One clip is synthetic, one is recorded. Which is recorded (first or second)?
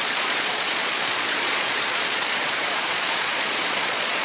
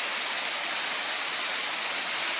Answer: second